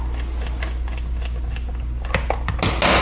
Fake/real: real